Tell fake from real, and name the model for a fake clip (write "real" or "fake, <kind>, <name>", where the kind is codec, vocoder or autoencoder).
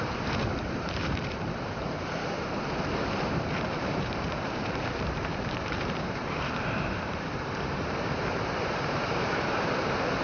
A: fake, vocoder, BigVGAN v2